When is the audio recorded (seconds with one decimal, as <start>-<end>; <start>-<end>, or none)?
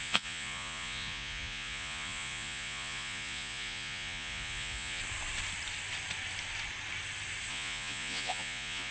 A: 5.0-7.5